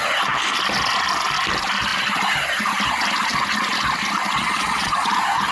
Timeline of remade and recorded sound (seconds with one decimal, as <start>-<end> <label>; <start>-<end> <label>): 0.0-4.4 recorded; 4.4-5.1 remade; 5.1-5.5 recorded